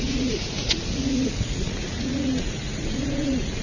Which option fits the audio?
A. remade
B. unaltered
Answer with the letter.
A